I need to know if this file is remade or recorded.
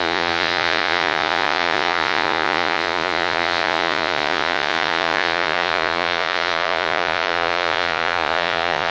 remade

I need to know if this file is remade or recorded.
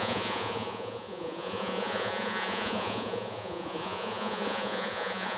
remade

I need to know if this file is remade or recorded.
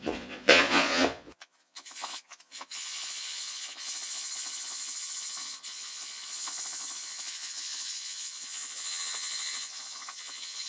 remade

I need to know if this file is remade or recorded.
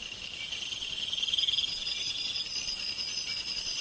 recorded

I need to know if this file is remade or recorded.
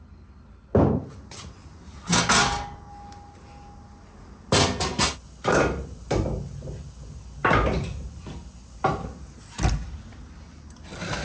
recorded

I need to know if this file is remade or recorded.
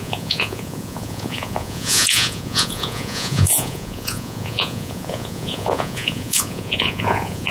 remade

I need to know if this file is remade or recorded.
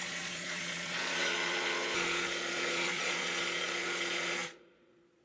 remade